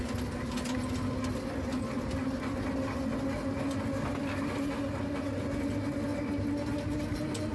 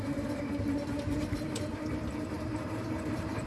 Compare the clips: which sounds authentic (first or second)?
first